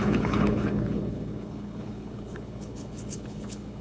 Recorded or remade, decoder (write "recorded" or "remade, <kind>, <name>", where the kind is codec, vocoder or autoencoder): remade, codec, HILCodec